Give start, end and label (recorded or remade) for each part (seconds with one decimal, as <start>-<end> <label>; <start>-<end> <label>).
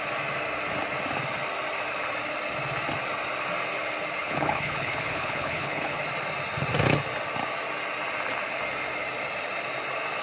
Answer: 0.0-4.2 recorded; 4.2-6.0 remade; 6.0-10.2 recorded